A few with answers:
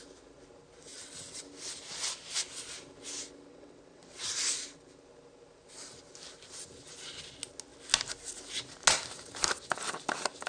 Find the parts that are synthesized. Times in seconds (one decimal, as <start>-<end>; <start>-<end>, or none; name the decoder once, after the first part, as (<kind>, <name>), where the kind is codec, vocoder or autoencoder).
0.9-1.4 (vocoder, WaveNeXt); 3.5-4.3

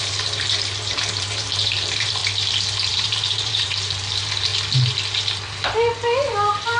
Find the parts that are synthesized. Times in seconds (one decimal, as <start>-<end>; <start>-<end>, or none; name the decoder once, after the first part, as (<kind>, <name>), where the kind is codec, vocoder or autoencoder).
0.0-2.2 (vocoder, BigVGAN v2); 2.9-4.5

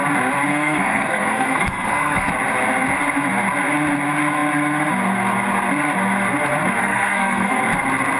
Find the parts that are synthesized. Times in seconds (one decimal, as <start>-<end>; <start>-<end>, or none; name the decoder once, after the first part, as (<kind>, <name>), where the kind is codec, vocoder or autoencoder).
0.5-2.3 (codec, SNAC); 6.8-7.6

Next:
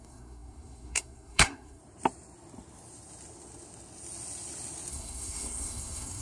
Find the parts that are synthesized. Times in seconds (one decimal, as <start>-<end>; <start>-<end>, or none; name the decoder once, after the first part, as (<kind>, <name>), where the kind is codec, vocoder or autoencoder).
0.0-1.8 (codec, SNAC); 4.9-6.2